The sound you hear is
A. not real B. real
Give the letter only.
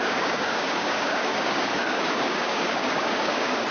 A